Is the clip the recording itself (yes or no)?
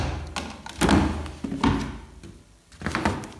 yes